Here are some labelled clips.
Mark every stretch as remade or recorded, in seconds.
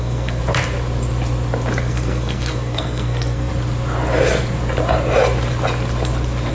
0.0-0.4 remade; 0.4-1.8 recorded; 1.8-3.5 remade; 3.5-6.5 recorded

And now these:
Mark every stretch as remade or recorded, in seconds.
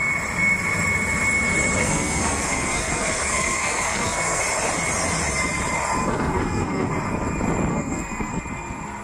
0.0-1.8 recorded; 1.8-4.4 remade; 4.4-6.0 recorded; 6.0-6.9 remade; 6.9-7.7 recorded; 7.7-8.4 remade; 8.4-9.0 recorded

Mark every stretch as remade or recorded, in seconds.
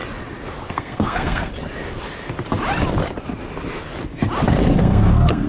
0.0-0.7 recorded; 0.7-1.5 remade; 1.5-4.8 recorded; 4.8-5.5 remade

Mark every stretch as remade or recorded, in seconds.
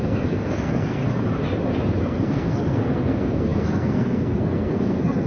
0.0-1.0 remade; 1.0-2.0 recorded; 2.0-5.3 remade